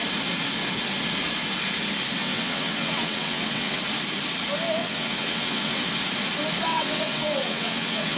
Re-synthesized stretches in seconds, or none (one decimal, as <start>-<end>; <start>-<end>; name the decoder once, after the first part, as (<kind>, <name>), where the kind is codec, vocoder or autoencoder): 2.2-3.8 (vocoder, WaveNeXt); 4.8-5.8; 6.7-8.2